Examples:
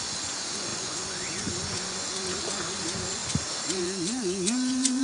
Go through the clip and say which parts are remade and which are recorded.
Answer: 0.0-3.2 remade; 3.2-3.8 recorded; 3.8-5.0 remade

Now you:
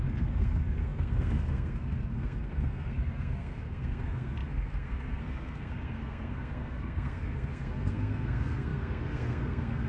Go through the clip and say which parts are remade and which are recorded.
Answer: 0.0-9.9 remade

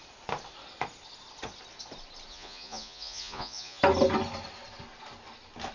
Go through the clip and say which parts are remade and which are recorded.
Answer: 0.0-2.3 recorded; 2.3-3.8 remade; 3.8-5.7 recorded